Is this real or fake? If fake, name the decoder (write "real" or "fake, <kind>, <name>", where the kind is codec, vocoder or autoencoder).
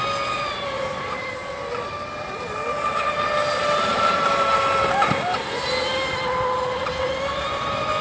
real